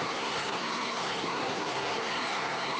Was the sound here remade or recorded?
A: remade